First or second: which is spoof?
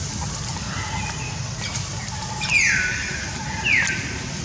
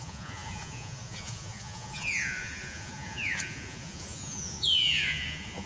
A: second